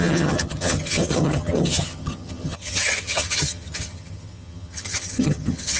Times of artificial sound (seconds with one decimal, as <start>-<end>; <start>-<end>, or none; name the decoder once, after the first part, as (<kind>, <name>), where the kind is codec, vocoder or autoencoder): 0.0-5.8 (vocoder, HiFi-GAN)